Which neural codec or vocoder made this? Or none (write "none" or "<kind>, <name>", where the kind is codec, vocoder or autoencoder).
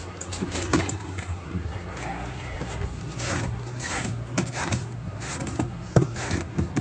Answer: codec, SNAC